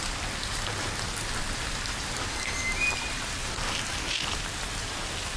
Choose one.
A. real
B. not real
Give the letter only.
A